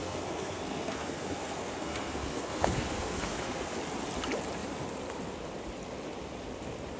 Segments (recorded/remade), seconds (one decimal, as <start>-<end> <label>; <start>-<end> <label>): 0.0-3.8 remade; 3.8-7.0 recorded